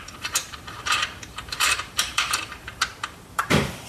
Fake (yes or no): yes